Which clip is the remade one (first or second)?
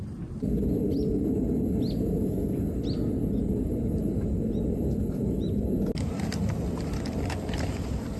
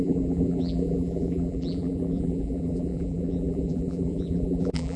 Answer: second